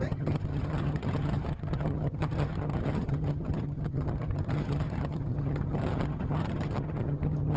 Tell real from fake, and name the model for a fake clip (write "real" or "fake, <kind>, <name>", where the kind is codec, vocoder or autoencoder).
fake, vocoder, HiFi-GAN